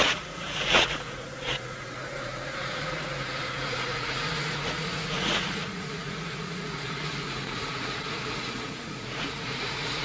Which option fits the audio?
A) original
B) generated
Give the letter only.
B